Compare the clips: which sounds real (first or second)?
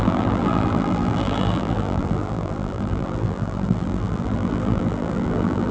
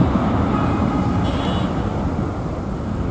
second